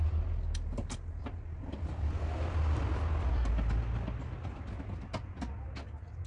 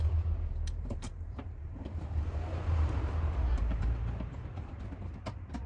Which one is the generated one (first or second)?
second